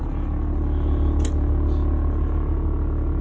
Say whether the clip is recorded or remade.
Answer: recorded